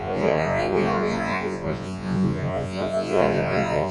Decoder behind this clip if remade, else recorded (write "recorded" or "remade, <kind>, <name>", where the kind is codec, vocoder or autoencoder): remade, vocoder, Vocos